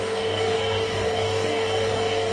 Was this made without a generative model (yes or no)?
no